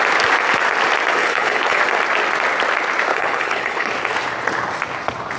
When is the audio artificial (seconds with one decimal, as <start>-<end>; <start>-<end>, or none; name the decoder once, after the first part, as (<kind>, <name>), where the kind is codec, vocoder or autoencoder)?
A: 1.2-1.8 (codec, HILCodec); 3.1-3.9